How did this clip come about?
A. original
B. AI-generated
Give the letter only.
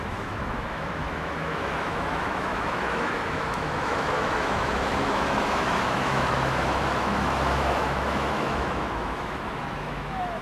B